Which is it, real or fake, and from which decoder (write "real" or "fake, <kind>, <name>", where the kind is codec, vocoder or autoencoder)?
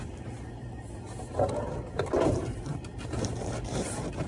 fake, vocoder, BigVGAN v2